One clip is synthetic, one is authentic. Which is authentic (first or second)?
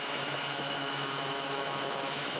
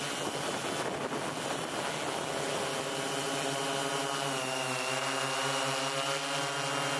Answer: second